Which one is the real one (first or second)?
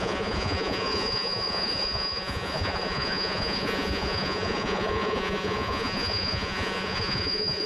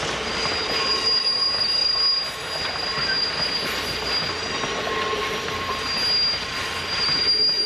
second